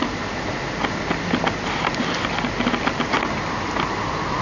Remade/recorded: recorded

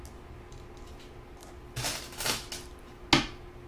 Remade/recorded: recorded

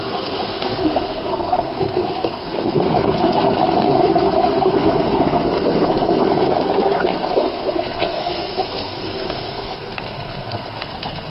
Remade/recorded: remade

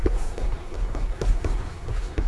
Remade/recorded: remade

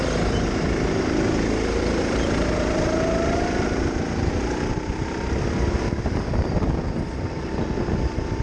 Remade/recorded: recorded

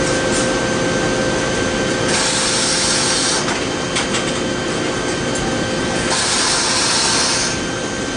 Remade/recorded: recorded